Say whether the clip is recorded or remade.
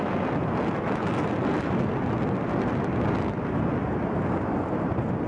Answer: recorded